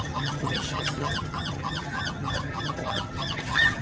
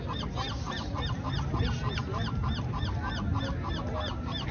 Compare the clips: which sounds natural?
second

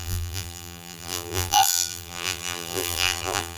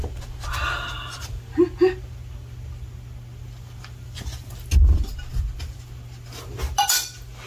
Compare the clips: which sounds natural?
second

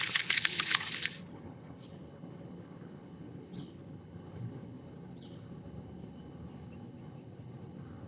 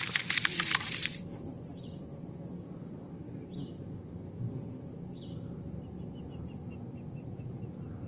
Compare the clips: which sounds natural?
second